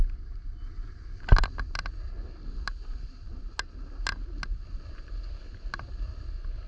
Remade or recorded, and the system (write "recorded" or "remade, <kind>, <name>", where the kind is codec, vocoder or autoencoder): recorded